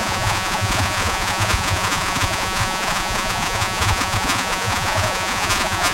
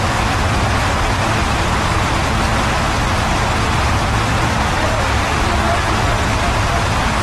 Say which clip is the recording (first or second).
second